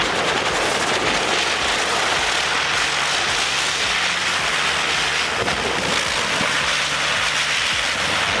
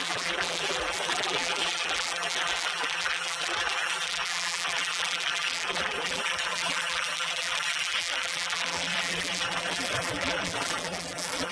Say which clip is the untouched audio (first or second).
first